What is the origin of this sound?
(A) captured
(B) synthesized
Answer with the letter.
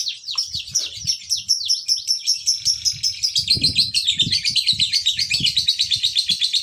A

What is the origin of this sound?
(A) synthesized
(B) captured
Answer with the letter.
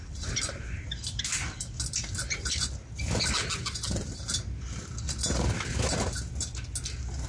B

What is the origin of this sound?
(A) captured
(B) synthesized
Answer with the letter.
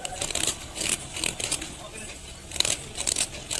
A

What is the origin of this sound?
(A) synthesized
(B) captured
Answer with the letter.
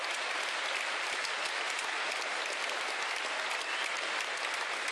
B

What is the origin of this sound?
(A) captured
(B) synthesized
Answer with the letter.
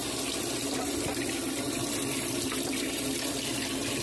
A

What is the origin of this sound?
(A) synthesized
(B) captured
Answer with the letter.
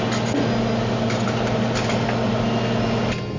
B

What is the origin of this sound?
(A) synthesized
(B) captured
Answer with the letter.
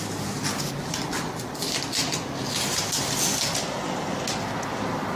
B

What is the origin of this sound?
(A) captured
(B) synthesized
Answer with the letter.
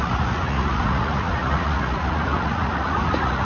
B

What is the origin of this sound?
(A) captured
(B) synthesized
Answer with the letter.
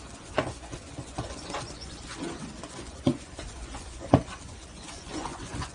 B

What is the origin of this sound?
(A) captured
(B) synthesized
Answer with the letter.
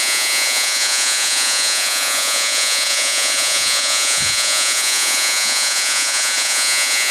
B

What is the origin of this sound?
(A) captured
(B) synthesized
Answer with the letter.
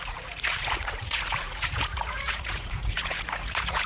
B